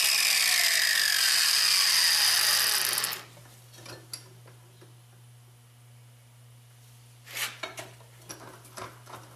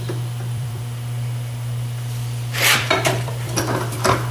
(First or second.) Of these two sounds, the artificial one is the second